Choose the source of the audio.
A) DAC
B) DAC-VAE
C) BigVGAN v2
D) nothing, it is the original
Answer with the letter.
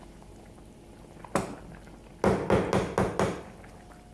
D